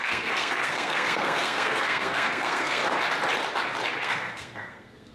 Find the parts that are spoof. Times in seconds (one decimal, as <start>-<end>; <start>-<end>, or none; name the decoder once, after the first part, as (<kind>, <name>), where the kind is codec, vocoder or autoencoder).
0.0-2.8 (codec, SNAC); 4.0-5.1